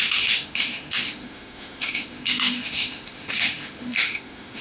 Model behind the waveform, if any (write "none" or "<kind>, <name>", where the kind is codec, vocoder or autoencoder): autoencoder, DAC-VAE